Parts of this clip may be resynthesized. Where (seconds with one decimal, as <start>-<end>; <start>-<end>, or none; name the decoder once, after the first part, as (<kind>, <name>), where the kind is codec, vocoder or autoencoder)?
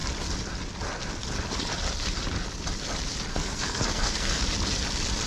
3.3-4.4 (codec, SNAC)